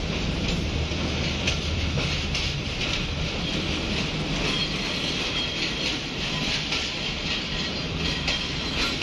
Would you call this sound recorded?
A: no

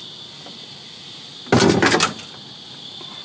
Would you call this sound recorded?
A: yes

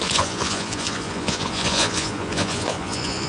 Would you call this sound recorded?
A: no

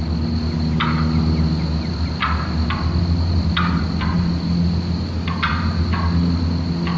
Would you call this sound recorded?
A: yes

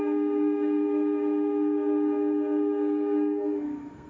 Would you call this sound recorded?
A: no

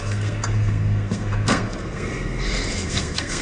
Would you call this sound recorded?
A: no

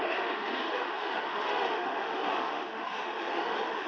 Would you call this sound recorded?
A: no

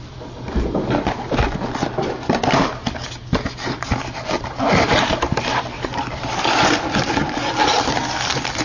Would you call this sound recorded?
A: yes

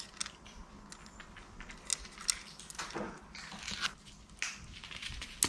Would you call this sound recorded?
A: yes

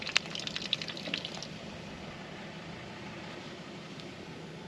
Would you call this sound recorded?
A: yes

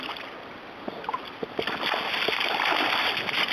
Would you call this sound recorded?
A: yes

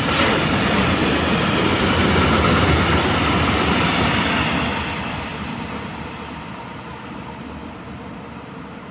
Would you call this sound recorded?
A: yes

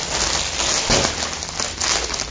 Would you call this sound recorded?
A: yes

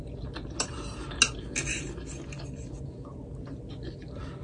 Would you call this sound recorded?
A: yes